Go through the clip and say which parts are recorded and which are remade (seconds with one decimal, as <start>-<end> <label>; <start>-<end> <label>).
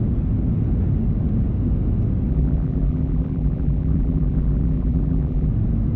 0.0-2.3 recorded; 2.3-5.5 remade; 5.5-6.0 recorded